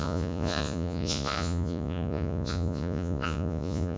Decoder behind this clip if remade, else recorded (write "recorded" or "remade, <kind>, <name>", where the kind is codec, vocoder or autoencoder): remade, vocoder, Vocos